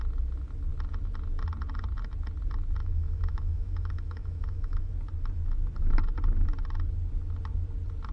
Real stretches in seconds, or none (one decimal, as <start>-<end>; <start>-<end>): 0.0-2.8; 4.9-8.1